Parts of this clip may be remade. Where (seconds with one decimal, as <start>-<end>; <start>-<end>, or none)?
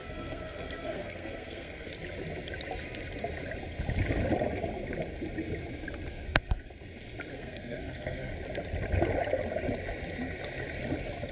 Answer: 0.0-1.9; 6.1-6.7; 7.3-8.3